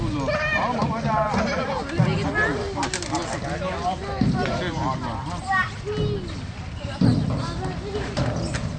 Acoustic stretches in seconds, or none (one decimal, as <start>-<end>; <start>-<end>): 0.0-8.8